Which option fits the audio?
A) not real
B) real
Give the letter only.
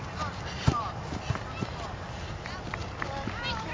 B